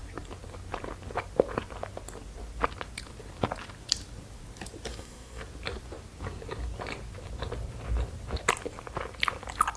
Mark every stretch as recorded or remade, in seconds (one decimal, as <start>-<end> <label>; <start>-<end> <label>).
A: 0.0-4.9 recorded; 4.9-5.4 remade; 5.4-9.8 recorded